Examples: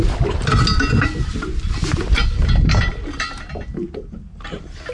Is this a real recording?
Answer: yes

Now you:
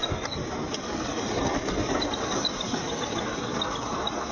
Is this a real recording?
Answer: yes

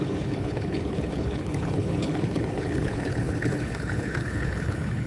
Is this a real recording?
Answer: no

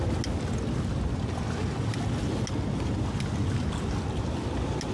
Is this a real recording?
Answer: yes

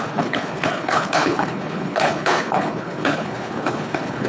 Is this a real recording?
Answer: no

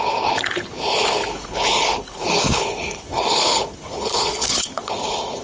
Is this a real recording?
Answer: no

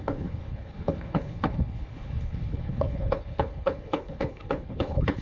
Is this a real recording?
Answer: no